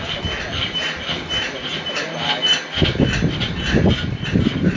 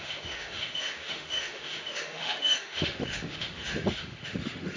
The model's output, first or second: second